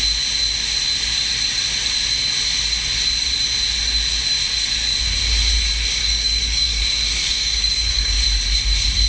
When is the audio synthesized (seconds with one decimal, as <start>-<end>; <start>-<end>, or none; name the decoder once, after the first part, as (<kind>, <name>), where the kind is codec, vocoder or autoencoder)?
6.0-6.8 (codec, DAC); 7.2-8.2